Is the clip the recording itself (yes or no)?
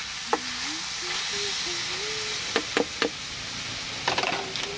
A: yes